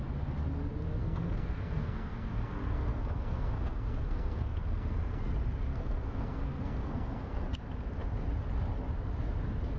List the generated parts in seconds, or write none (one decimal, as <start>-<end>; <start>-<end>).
1.0-5.2; 5.7-7.6

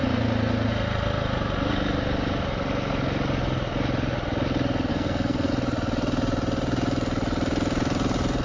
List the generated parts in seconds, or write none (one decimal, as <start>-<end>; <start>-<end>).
4.9-5.5

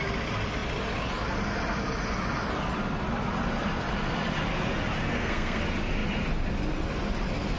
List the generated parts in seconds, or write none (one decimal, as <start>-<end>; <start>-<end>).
5.1-5.6

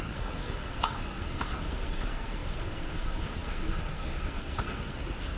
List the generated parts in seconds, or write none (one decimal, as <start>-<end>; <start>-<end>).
0.0-5.4

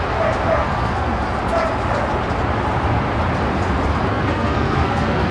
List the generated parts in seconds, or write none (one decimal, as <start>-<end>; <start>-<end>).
0.6-1.2; 4.1-5.3

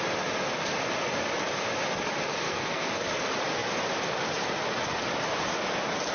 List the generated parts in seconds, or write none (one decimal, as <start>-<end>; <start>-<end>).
2.3-3.0